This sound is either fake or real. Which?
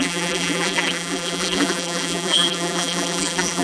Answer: fake